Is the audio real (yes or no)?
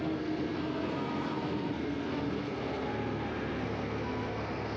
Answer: no